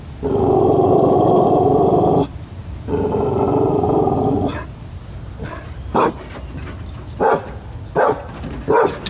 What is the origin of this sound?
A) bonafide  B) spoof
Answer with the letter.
A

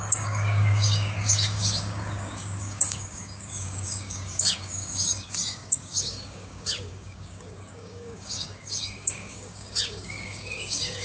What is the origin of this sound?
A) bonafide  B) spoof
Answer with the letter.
B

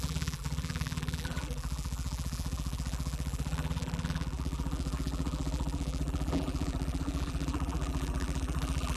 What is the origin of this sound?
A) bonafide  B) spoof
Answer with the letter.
B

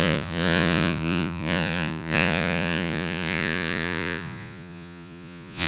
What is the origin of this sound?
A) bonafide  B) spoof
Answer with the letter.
B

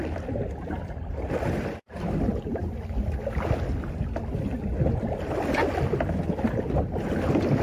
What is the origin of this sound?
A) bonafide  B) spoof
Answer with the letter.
A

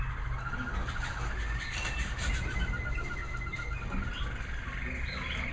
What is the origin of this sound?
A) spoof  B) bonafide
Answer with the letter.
B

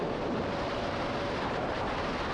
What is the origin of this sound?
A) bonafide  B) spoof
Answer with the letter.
A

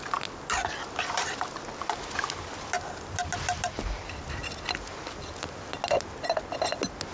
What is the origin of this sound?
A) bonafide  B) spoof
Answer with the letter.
A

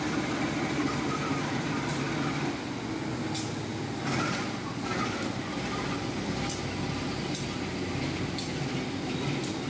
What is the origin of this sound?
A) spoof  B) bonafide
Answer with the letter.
B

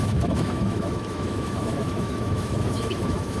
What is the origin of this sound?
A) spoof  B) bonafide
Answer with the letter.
A